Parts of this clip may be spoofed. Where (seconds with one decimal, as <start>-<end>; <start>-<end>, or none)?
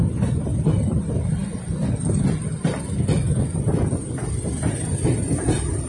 none